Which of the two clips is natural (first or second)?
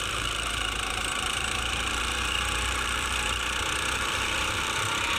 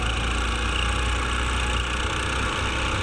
second